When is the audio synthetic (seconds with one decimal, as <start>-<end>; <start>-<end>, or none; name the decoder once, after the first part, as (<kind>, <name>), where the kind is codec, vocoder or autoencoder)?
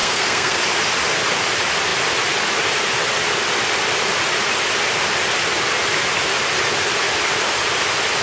0.0-0.6 (codec, SNAC)